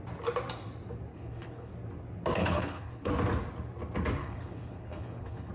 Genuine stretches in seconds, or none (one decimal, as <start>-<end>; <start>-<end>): 0.0-1.1; 1.7-2.4; 3.1-4.2